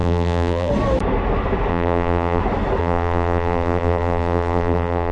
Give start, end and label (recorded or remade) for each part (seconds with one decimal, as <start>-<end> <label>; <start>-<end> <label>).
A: 0.0-0.7 remade; 0.7-1.7 recorded; 1.7-2.4 remade; 2.4-2.8 recorded; 2.8-5.1 remade

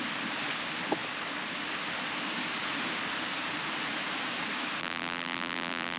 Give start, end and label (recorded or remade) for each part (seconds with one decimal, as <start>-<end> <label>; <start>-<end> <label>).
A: 0.0-4.8 recorded; 4.8-6.0 remade

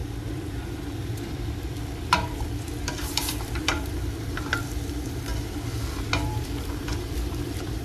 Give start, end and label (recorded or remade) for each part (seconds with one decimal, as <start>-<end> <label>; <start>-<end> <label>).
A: 0.0-5.3 remade; 5.3-6.4 recorded; 6.4-7.8 remade